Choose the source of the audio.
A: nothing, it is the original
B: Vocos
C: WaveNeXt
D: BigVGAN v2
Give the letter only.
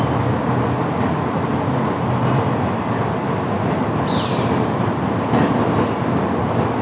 A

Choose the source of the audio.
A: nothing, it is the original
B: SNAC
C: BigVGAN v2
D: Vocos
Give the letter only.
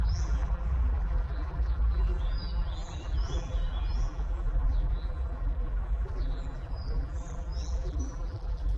C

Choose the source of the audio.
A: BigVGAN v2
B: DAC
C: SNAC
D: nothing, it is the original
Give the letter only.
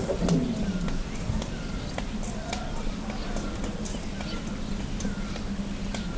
D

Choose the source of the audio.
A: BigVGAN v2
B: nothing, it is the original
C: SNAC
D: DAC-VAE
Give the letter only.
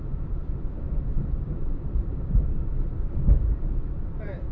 A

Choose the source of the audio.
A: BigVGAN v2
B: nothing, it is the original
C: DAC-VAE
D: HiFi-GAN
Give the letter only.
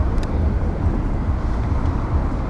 B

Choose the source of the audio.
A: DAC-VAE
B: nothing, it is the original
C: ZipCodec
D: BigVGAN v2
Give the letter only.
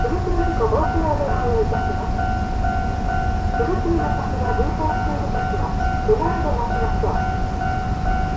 B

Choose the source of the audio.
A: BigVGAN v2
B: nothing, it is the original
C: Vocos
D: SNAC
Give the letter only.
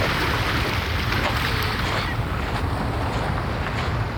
B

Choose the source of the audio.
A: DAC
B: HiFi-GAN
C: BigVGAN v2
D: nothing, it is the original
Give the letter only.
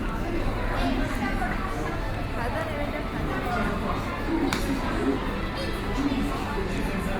D